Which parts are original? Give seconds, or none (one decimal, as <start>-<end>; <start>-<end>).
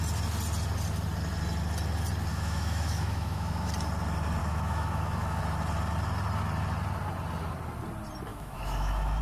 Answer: 0.0-2.3; 3.7-4.4; 5.4-8.3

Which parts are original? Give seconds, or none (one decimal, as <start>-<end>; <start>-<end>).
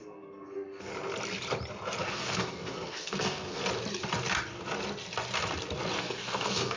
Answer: 0.9-2.0; 3.6-6.0